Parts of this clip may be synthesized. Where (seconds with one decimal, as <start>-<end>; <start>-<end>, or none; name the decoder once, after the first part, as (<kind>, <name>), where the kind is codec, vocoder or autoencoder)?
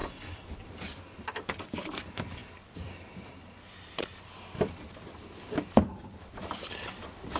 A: 2.4-6.2 (vocoder, BigVGAN v2)